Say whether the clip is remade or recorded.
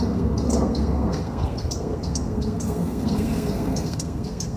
remade